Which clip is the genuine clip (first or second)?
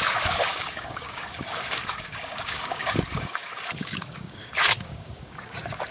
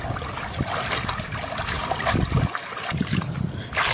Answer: second